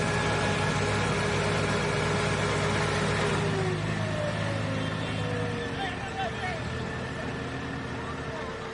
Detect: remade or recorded recorded